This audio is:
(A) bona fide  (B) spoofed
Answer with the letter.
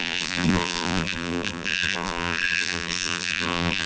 B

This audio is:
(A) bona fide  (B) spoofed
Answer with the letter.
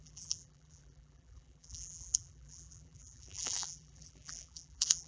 B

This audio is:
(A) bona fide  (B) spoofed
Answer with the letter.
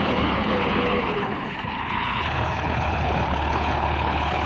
B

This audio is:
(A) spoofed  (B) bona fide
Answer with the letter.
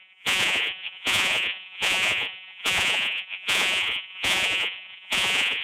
A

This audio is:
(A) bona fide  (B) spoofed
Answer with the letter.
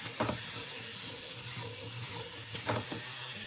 A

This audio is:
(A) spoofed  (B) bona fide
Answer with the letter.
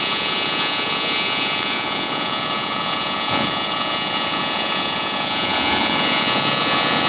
A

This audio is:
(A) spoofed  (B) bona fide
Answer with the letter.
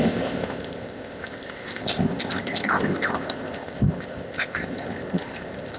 A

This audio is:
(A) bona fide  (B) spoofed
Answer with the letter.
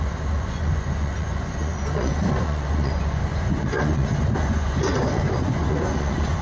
B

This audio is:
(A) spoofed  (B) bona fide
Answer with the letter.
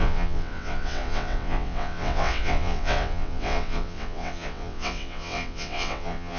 A